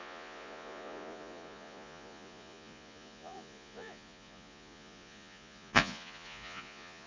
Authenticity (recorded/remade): remade